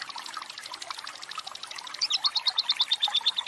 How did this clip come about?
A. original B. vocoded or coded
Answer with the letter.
A